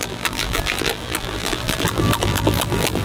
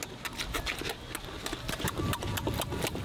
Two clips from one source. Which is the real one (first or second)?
second